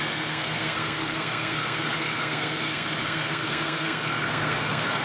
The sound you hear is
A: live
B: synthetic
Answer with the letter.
B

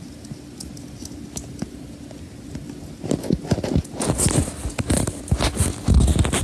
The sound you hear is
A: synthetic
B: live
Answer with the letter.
B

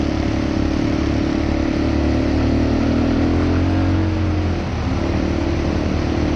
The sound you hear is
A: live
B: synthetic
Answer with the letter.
A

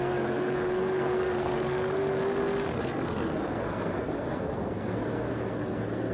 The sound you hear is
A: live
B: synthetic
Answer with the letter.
B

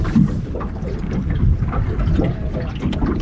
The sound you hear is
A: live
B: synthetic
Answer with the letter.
A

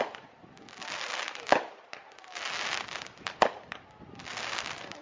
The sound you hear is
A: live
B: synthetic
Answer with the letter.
A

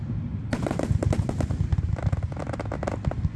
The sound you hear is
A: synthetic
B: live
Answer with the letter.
B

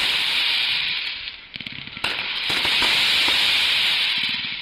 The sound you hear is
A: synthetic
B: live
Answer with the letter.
A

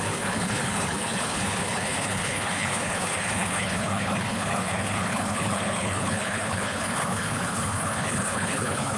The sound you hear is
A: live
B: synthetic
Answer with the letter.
B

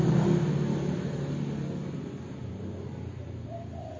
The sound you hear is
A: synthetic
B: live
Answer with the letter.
B